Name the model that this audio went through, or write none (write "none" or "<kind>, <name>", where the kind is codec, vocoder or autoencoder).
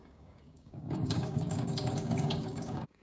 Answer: codec, DAC